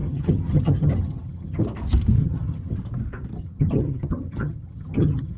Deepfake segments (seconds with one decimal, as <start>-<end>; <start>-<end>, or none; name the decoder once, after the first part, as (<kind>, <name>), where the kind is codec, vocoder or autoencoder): 0.0-1.6 (vocoder, HiFi-GAN); 2.2-2.8; 3.4-5.4